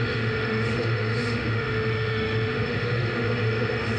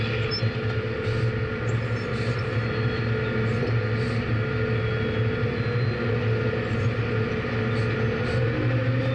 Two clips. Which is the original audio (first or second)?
second